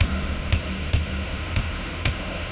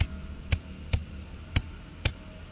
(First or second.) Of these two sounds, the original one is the second